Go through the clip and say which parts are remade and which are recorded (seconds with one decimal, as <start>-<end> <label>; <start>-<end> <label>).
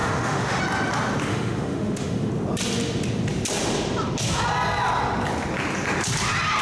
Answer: 0.0-0.6 remade; 0.6-1.3 recorded; 1.3-2.3 remade; 2.3-6.6 recorded